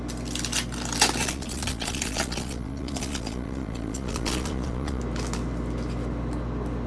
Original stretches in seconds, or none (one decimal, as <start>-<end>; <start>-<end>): 0.0-1.2; 5.0-6.9